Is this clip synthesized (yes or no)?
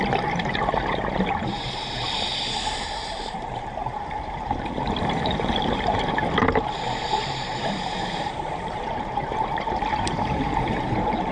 yes